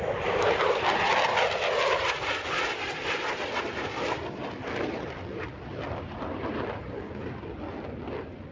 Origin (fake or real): fake